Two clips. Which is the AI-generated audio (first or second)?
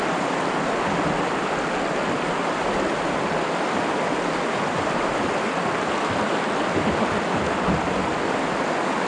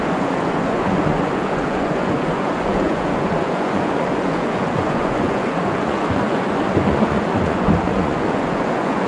second